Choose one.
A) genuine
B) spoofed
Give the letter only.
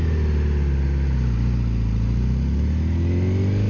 A